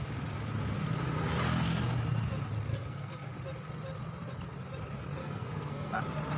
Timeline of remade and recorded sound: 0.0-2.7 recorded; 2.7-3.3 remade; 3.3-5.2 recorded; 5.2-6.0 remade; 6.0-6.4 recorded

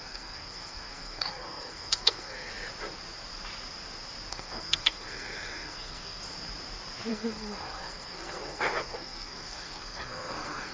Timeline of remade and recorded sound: 0.0-2.5 remade; 2.5-4.3 recorded; 4.3-6.2 remade; 6.2-7.1 recorded; 7.1-10.7 remade

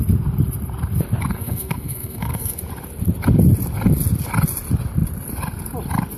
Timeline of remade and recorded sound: 0.0-1.3 recorded; 1.3-2.6 remade; 2.6-6.2 recorded

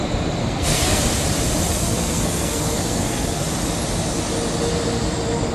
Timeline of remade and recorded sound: 0.0-0.4 recorded; 0.4-1.0 remade; 1.0-1.7 recorded; 1.7-3.4 remade; 3.4-5.5 recorded

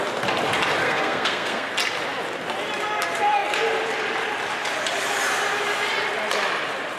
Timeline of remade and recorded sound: 0.0-0.8 recorded; 0.8-1.7 remade; 1.7-7.0 recorded